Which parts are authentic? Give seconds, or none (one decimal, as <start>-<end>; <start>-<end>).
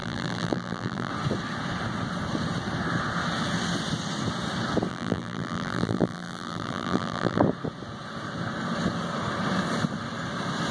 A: 1.1-4.9; 7.4-10.7